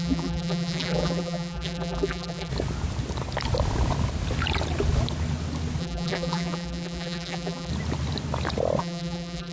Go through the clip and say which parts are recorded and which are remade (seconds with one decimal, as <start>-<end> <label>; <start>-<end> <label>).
0.0-2.5 remade; 2.5-5.8 recorded; 5.8-7.7 remade; 7.7-8.8 recorded; 8.8-9.5 remade